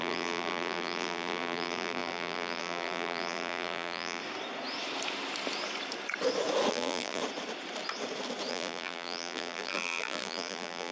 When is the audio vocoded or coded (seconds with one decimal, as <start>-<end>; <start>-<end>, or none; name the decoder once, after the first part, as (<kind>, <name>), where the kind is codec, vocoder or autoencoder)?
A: 0.0-4.2 (vocoder, BigVGAN v2); 6.7-7.2; 8.5-10.9